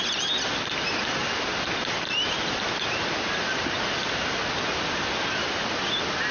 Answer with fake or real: real